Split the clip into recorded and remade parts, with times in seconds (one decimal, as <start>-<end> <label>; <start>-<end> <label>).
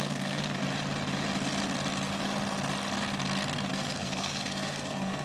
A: 0.0-0.6 remade; 0.6-3.7 recorded; 3.7-5.2 remade